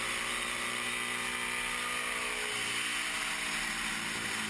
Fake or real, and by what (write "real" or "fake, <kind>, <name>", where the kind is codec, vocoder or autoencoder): real